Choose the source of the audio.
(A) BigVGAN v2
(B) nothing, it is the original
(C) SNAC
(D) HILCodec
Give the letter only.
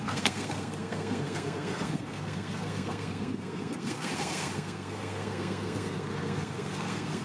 C